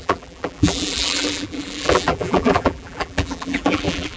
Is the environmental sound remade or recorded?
remade